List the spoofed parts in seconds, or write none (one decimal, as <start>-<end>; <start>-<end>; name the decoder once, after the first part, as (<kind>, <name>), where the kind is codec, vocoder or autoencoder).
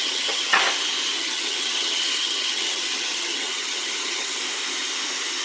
0.0-0.6 (vocoder, HiFi-GAN); 1.2-4.4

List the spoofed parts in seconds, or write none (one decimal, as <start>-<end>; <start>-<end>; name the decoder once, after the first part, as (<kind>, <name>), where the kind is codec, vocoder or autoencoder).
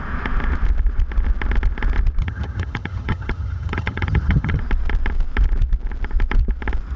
2.2-4.6 (vocoder, HiFi-GAN)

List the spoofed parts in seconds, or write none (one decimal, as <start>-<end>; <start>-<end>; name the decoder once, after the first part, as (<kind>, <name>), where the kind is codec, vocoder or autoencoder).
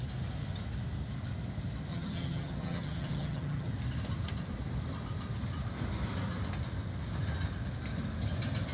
1.9-3.7 (vocoder, HiFi-GAN)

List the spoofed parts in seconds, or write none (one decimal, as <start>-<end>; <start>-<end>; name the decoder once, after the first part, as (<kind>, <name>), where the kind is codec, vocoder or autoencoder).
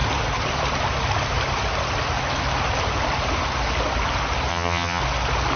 4.5-5.0 (vocoder, HiFi-GAN)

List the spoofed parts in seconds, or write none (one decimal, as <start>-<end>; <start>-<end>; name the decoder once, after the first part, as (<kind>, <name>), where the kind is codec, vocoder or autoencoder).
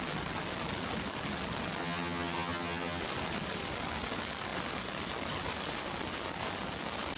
1.8-3.0 (vocoder, HiFi-GAN)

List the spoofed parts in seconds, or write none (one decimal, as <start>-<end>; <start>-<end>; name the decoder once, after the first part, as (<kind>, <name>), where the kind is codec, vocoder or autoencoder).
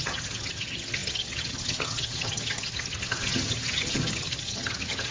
0.0-5.1 (vocoder, HiFi-GAN)